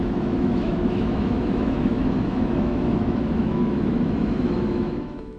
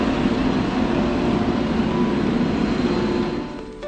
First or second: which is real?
second